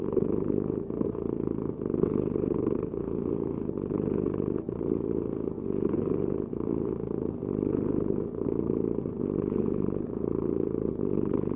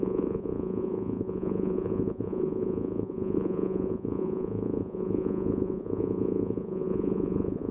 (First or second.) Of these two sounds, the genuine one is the first